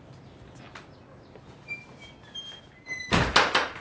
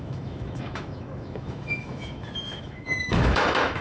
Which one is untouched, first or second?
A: first